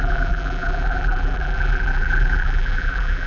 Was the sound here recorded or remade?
remade